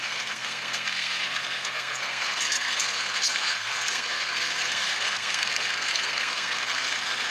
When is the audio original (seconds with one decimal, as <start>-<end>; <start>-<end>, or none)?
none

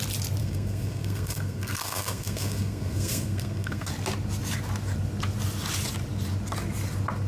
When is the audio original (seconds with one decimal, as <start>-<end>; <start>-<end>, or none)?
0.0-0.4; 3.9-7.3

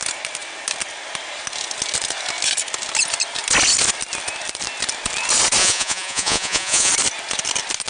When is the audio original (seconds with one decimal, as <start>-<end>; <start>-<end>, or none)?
0.0-5.6; 6.9-7.9

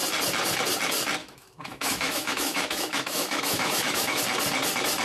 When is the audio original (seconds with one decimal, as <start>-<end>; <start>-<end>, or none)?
0.0-1.2; 4.2-5.0

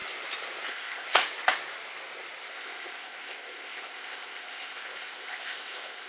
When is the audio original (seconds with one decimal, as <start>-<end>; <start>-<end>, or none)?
0.0-0.7; 1.2-2.5

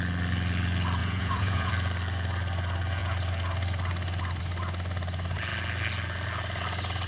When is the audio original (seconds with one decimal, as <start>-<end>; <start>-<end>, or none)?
0.0-1.0; 1.7-7.1

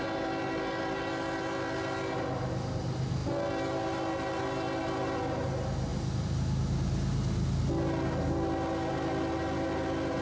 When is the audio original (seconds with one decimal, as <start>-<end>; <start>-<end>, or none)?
0.0-10.2